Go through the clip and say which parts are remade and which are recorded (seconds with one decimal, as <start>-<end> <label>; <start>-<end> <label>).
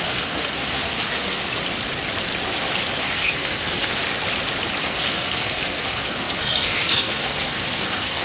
0.0-1.4 remade; 1.4-3.0 recorded; 3.0-4.0 remade; 4.0-4.8 recorded; 4.8-8.2 remade